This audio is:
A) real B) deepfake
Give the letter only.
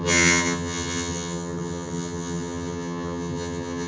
B